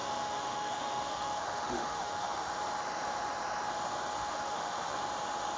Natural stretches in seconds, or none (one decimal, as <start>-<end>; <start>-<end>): 2.5-4.2; 5.0-5.6